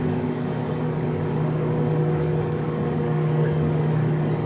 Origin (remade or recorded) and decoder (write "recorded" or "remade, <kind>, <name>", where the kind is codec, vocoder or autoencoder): remade, codec, DAC